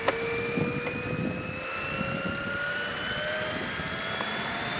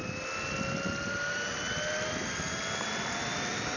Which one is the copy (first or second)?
first